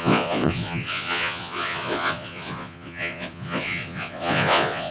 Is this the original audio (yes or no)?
no